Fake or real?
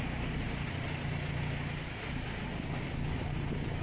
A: real